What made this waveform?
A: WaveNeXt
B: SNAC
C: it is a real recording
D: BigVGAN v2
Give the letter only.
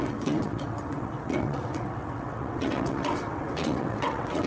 A